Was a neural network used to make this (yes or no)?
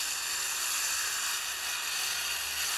yes